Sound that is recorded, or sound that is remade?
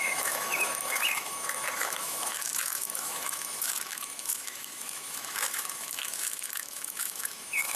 remade